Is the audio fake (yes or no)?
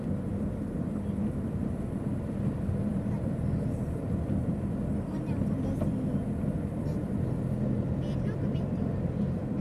yes